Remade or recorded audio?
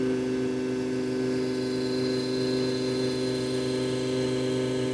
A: recorded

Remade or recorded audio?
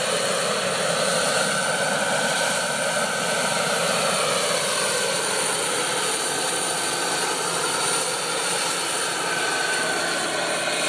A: recorded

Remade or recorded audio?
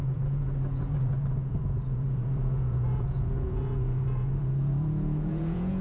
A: remade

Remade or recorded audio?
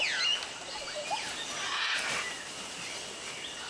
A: recorded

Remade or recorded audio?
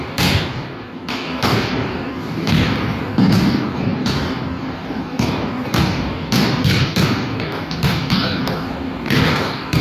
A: remade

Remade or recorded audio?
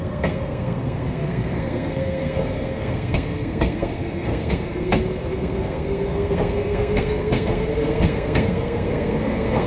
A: remade